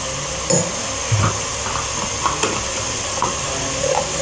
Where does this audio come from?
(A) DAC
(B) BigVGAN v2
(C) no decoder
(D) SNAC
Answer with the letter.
C